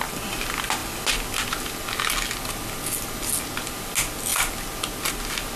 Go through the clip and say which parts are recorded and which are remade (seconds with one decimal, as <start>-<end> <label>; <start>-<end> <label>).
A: 0.0-5.6 recorded